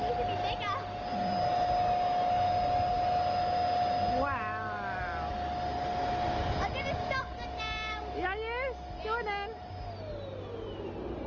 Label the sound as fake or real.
real